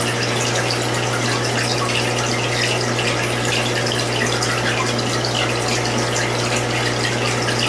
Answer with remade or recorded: recorded